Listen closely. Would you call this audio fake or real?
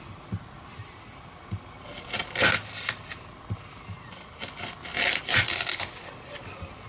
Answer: real